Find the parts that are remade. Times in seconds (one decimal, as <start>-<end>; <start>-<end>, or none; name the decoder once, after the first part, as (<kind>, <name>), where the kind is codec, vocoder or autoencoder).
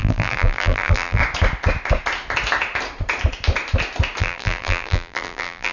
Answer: 0.0-1.2 (vocoder, BigVGAN v2); 4.2-5.7